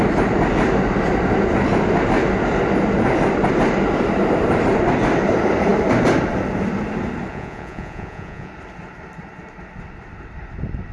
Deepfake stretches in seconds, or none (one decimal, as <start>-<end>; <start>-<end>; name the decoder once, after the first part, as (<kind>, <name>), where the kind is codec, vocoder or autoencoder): 7.3-8.5 (vocoder, Vocos)